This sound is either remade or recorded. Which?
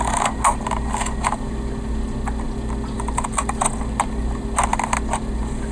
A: recorded